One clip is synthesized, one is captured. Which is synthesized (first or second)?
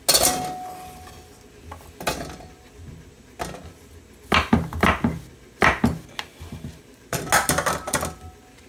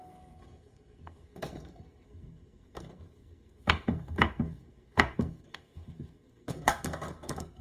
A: second